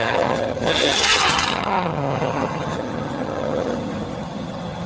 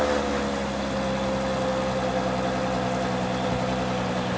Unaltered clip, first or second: second